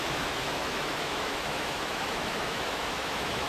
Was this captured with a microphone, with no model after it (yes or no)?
no